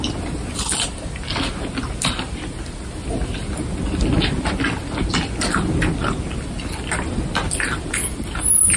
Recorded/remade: recorded